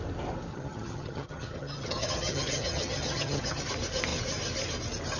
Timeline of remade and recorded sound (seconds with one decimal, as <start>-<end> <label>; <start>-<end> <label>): 0.0-0.5 recorded; 0.5-3.6 remade; 3.6-5.2 recorded